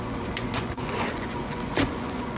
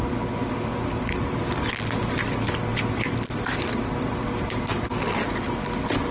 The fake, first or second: first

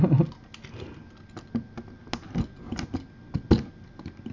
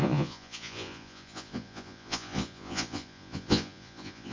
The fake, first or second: second